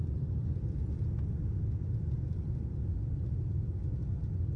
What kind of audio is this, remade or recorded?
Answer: recorded